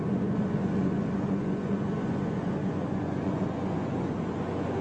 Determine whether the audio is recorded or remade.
remade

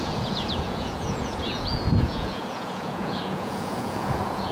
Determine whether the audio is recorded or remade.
remade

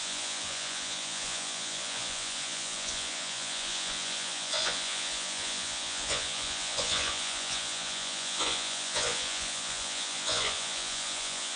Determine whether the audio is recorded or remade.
remade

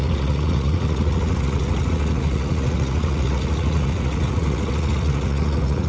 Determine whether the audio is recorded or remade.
remade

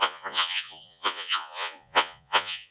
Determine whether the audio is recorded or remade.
remade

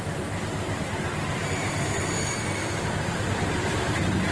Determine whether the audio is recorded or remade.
recorded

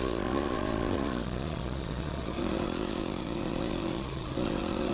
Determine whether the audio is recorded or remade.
remade